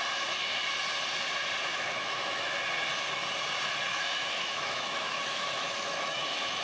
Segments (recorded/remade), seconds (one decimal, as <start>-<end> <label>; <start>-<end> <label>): 0.0-1.7 recorded; 1.7-2.5 remade; 2.5-3.9 recorded; 3.9-6.6 remade